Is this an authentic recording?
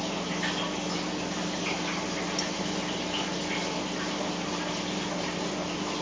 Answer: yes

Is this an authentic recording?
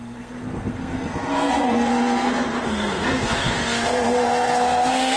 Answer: no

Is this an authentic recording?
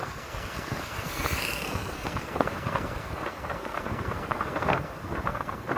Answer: no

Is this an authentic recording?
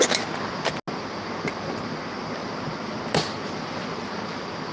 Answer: yes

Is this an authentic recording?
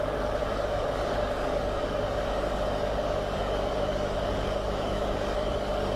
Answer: no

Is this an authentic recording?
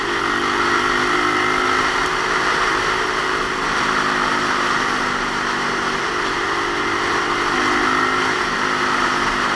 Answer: yes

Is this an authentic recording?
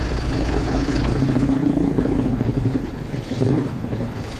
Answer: no